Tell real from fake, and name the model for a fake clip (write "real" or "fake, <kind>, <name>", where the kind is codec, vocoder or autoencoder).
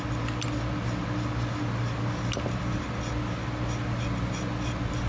real